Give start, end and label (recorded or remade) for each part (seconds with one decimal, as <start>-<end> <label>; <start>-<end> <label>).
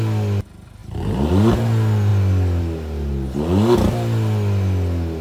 0.0-0.8 recorded; 0.8-1.3 remade; 1.3-5.2 recorded